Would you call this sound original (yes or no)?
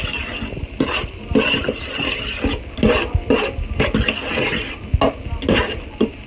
yes